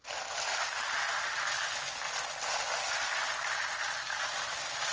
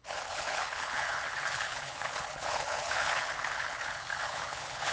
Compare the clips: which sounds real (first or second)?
first